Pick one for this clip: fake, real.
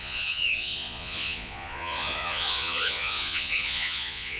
fake